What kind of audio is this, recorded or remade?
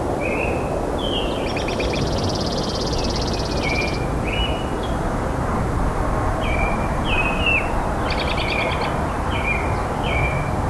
recorded